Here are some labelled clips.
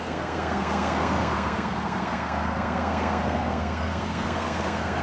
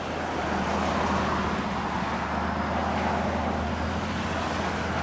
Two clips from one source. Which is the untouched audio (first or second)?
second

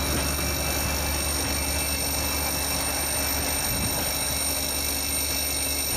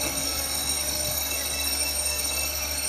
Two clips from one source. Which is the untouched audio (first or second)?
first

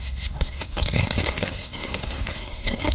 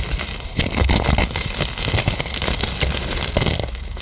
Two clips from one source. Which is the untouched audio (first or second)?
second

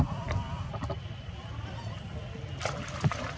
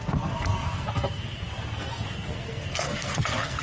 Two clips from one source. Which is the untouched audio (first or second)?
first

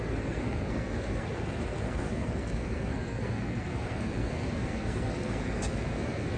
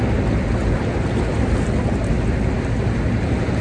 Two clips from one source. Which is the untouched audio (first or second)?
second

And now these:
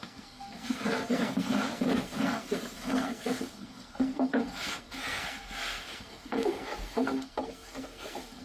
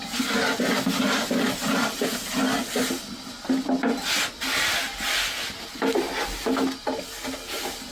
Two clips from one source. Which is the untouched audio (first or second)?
second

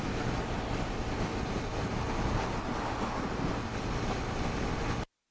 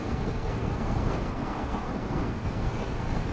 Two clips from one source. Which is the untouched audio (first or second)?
first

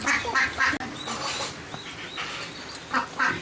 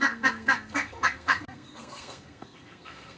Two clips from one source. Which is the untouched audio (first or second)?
first